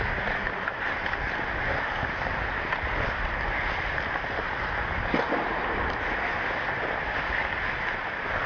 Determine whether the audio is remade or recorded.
recorded